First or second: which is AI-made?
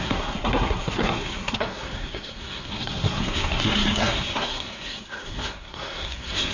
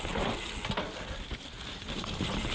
first